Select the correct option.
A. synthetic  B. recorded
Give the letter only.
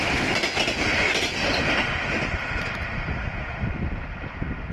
B